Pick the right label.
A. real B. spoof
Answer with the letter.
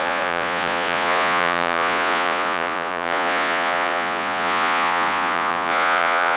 B